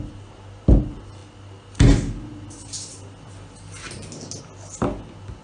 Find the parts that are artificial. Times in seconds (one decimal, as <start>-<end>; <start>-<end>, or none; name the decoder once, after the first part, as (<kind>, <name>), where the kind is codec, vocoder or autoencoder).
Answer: none